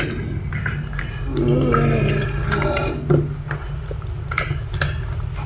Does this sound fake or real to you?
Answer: real